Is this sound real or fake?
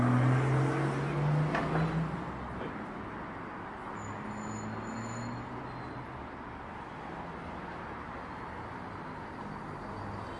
real